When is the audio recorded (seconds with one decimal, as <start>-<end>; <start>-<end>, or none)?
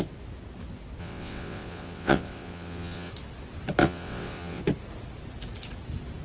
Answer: 0.0-1.0; 3.1-3.8; 4.6-6.2